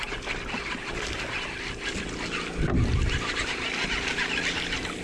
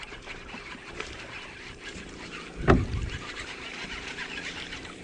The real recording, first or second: first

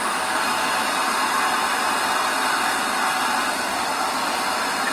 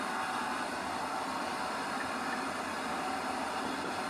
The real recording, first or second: first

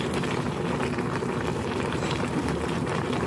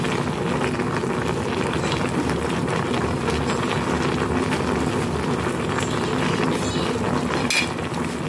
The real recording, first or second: second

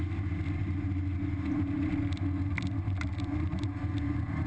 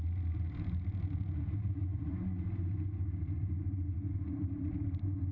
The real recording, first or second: first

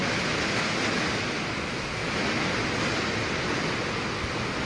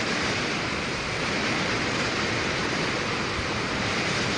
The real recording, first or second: first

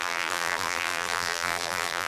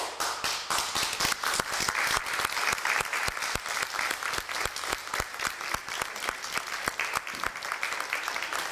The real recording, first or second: second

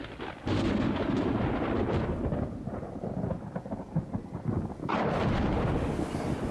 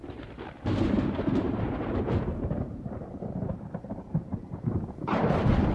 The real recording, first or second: first